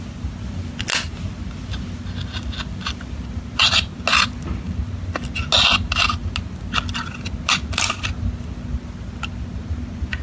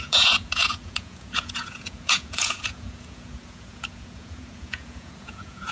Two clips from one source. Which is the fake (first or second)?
second